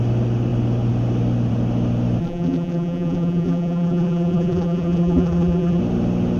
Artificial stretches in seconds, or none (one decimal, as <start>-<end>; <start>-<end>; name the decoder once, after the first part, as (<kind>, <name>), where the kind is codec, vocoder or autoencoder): 2.2-5.8 (vocoder, BigVGAN v2)